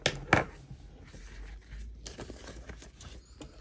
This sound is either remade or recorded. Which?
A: recorded